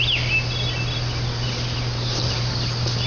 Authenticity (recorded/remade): recorded